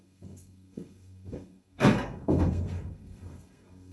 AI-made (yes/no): yes